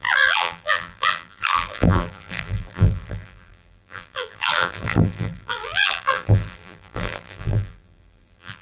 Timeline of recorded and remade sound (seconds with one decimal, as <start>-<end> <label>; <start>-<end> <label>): 0.0-8.6 remade

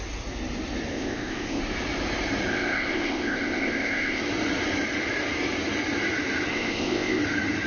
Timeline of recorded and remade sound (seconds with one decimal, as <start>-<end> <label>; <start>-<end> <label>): 0.0-0.9 recorded; 0.9-1.6 remade; 1.6-2.5 recorded; 2.5-4.2 remade; 4.2-6.5 recorded; 6.5-7.2 remade; 7.2-7.7 recorded

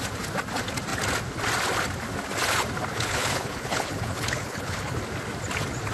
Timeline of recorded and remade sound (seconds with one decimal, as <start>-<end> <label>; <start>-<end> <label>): 0.0-2.9 recorded; 2.9-5.0 remade; 5.0-5.9 recorded

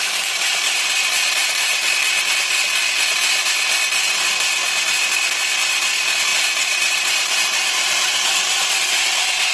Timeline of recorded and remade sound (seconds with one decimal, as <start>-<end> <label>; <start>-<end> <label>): 0.0-1.9 remade; 1.9-6.3 recorded; 6.3-8.7 remade; 8.7-9.5 recorded